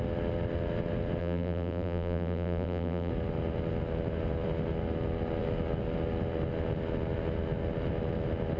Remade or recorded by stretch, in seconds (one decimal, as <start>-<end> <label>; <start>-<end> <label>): 0.0-1.2 recorded; 1.2-3.1 remade; 3.1-8.6 recorded